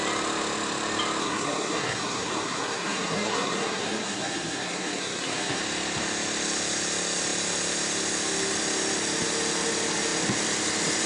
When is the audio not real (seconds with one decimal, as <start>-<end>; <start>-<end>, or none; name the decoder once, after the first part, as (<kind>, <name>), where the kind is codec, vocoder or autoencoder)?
1.2-5.6 (codec, SNAC)